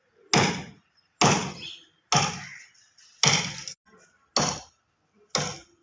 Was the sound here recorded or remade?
recorded